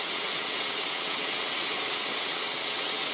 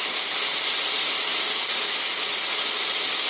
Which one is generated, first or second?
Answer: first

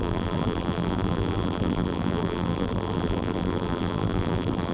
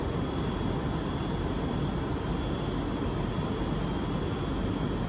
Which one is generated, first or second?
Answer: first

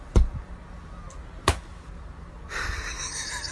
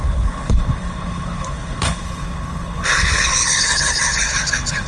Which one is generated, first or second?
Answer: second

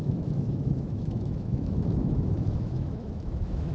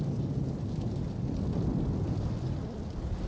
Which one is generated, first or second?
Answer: first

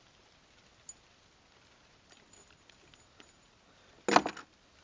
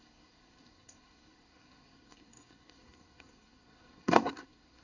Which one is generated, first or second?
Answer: second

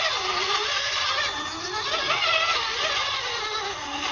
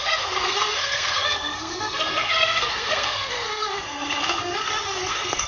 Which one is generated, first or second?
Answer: second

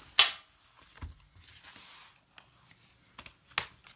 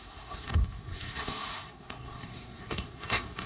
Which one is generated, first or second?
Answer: second